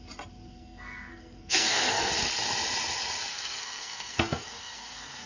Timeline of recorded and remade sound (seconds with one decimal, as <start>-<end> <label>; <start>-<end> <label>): 0.0-0.5 recorded; 0.5-2.1 remade; 2.1-3.3 recorded; 3.3-5.3 remade